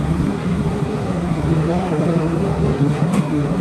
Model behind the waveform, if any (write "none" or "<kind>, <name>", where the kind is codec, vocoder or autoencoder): codec, SNAC